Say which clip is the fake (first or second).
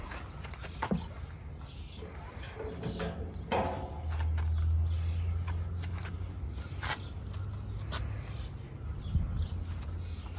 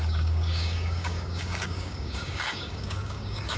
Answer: second